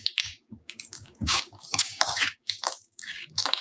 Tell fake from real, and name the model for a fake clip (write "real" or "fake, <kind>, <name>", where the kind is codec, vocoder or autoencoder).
fake, codec, DAC